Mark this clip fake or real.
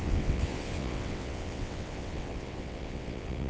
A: fake